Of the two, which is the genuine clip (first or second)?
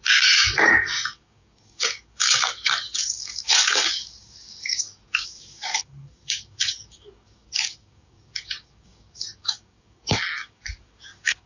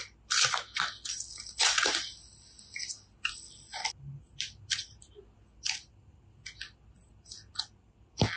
second